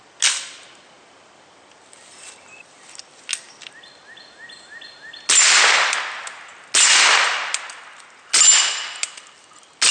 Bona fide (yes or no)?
yes